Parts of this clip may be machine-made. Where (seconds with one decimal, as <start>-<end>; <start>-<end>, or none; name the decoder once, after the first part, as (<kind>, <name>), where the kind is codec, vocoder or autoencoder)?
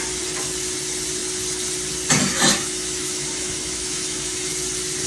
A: 2.3-4.5 (autoencoder, DAC-VAE)